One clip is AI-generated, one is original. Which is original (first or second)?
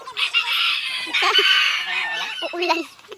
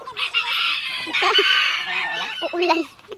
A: first